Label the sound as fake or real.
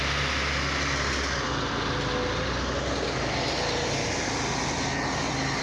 real